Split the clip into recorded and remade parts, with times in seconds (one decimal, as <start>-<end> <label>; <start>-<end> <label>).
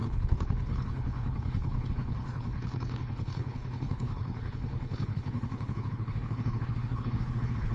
0.0-7.7 remade